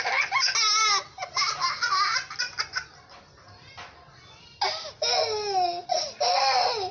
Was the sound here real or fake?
real